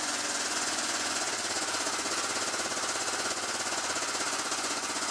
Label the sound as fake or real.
fake